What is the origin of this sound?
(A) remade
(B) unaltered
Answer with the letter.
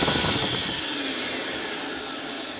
B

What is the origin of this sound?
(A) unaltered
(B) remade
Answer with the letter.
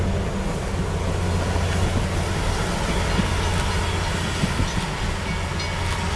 A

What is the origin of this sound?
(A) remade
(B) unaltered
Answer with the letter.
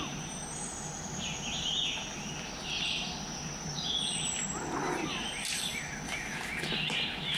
B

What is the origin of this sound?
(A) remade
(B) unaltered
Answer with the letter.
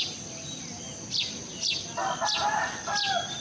B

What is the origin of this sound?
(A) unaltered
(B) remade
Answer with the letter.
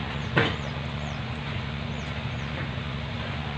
B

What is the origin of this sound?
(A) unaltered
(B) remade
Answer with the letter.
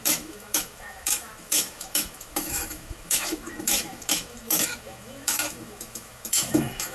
B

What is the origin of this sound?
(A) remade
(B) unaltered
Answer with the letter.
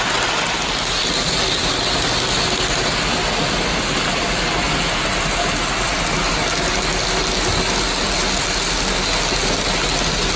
B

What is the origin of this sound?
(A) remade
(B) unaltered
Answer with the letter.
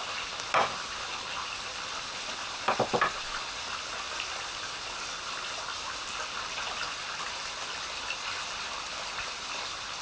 B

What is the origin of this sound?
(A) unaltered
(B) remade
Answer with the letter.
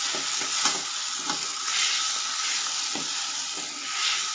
A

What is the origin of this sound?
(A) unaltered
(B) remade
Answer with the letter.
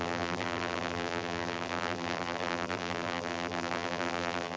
B